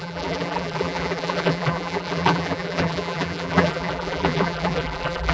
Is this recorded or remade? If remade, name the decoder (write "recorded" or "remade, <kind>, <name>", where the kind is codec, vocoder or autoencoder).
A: remade, vocoder, BigVGAN v2